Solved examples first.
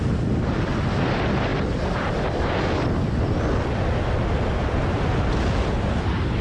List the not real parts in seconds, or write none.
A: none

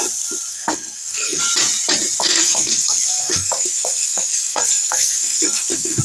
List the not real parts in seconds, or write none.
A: 0.5-1.4 (codec, SNAC); 2.2-6.0

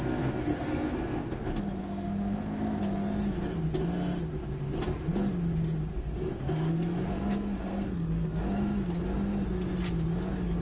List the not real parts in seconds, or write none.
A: 0.5-1.3 (codec, SNAC); 1.8-2.8; 5.9-8.4

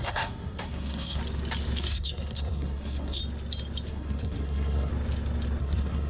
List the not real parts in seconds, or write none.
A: 0.0-1.2 (codec, SNAC); 1.8-3.2; 3.9-4.9; 5.6-6.1